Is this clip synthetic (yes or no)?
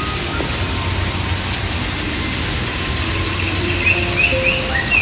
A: no